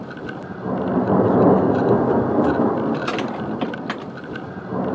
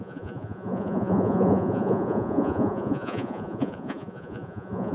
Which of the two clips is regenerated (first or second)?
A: second